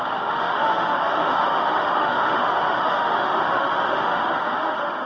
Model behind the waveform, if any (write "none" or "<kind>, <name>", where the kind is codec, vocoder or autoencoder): autoencoder, DAC-VAE